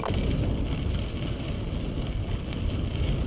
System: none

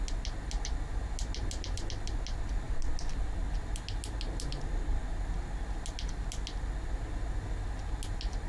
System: none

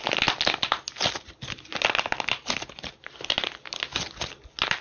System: none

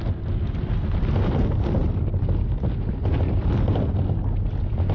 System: none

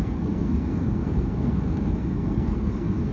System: codec, SNAC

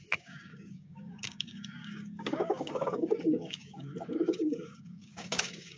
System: codec, DAC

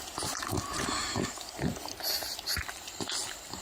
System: vocoder, BigVGAN v2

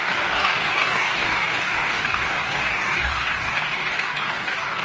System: codec, DAC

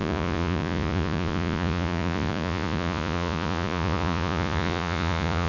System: vocoder, Vocos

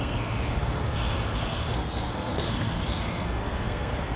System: codec, SNAC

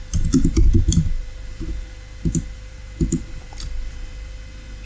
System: vocoder, BigVGAN v2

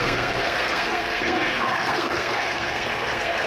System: codec, SNAC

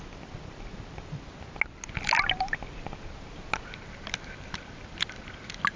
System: none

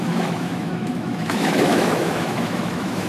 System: autoencoder, DAC-VAE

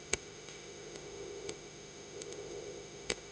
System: autoencoder, DAC-VAE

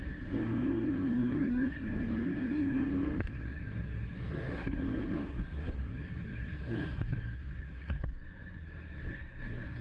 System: codec, SNAC